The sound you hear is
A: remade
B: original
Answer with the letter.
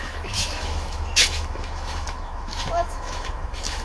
A